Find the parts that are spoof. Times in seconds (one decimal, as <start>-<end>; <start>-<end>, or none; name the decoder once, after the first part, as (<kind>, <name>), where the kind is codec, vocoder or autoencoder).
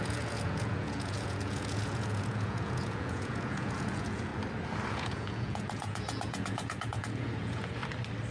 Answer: 0.0-4.3 (vocoder, Vocos); 4.9-7.8